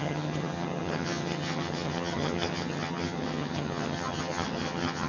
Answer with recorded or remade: remade